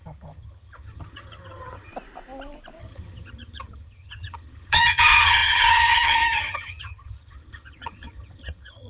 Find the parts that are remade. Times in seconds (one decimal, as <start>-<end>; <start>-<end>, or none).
0.0-1.9; 2.8-8.9